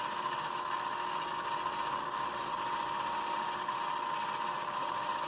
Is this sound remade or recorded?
recorded